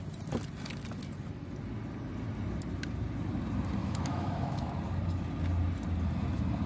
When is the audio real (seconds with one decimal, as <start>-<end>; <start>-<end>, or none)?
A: 0.0-3.8; 4.8-6.7